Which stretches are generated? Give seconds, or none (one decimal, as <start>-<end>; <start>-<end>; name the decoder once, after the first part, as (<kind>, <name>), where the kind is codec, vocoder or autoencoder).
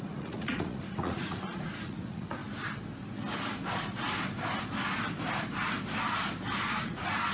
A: 0.0-2.4 (vocoder, Vocos); 6.8-7.3